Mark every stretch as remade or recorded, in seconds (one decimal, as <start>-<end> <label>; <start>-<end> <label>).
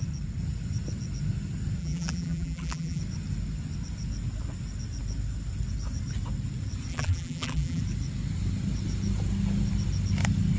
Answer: 0.0-1.8 recorded; 1.8-3.0 remade; 3.0-6.9 recorded; 6.9-7.8 remade; 7.8-10.6 recorded